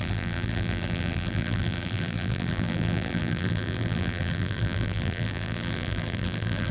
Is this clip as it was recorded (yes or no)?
no